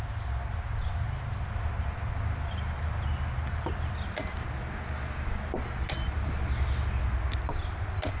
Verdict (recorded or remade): recorded